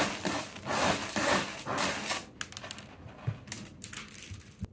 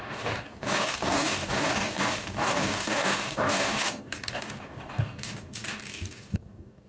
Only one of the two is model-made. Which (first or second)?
second